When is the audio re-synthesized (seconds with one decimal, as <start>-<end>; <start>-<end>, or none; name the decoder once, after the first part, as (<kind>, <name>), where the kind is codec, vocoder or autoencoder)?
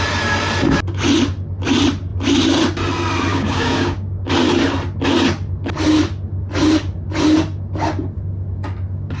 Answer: 3.3-4.3 (codec, DAC)